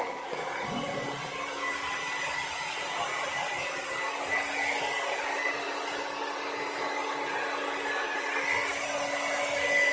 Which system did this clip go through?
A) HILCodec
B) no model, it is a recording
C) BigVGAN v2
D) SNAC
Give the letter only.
B